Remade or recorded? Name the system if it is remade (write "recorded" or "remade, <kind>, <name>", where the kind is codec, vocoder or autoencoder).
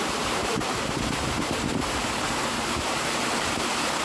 remade, vocoder, BigVGAN v2